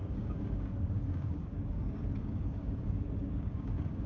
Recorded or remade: remade